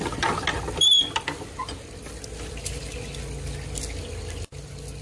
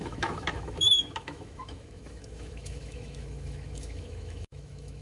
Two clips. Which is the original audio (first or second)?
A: first